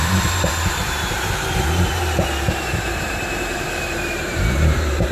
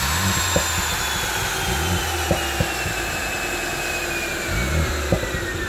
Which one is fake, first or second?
first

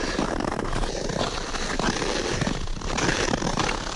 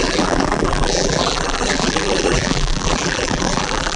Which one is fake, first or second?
second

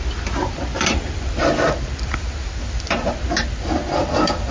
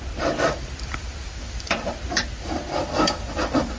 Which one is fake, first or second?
second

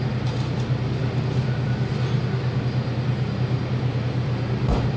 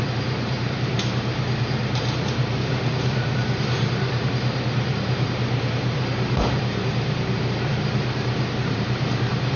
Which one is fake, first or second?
second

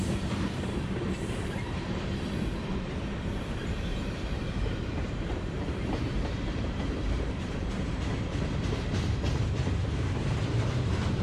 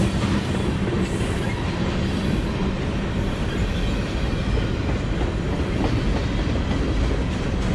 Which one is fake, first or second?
first